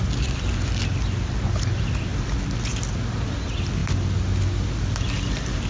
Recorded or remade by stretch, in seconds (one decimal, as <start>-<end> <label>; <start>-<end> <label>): 0.0-5.7 recorded